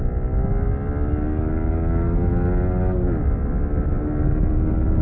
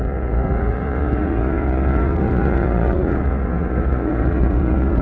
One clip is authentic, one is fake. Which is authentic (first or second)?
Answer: first